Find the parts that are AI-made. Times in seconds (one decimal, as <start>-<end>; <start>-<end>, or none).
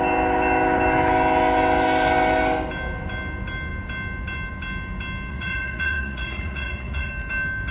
5.3-7.1